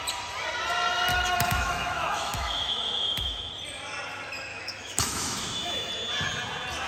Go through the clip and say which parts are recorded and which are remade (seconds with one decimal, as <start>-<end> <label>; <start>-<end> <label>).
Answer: 0.0-1.1 recorded; 1.1-3.5 remade; 3.5-4.5 recorded; 4.5-5.9 remade; 5.9-6.9 recorded